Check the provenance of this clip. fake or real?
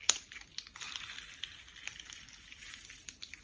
real